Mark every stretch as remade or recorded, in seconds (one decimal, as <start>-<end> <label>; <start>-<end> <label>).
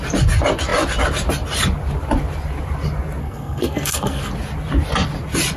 0.0-3.2 recorded; 3.2-4.3 remade; 4.3-5.6 recorded